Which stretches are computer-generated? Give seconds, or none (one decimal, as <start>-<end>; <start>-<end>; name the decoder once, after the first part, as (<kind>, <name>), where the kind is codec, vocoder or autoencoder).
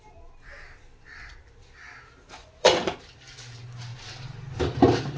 2.4-2.9 (vocoder, Vocos)